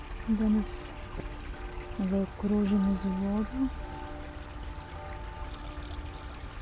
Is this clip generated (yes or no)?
no